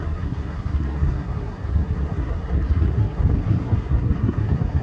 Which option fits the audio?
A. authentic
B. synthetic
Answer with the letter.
B